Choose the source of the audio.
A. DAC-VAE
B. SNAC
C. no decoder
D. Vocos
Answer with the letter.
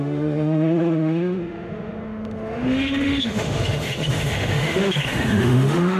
A